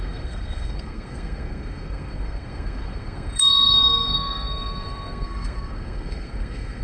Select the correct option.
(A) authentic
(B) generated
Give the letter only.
B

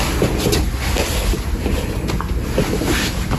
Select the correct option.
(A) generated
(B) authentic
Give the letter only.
B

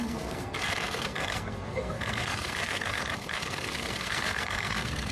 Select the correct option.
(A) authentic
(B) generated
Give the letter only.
B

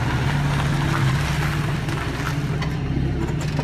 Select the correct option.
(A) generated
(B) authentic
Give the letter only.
B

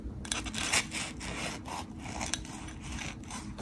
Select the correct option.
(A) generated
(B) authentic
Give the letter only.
B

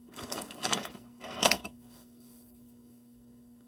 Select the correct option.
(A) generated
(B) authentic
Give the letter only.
A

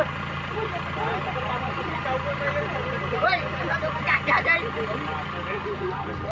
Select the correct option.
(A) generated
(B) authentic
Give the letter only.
B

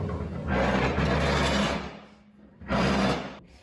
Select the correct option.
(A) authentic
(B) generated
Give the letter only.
A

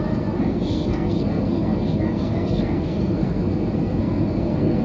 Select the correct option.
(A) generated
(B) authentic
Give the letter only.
A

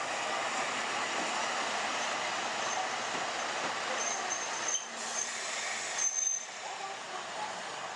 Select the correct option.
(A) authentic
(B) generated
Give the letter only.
A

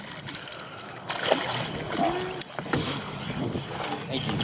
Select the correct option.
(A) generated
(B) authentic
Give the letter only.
B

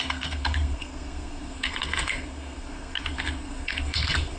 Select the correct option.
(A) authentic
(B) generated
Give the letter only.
B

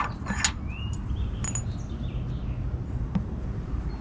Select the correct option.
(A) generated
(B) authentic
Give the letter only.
B